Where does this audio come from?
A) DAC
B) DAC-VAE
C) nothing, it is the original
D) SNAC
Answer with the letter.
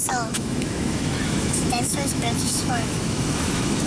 B